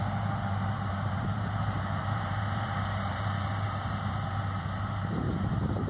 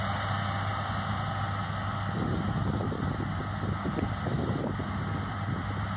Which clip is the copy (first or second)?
first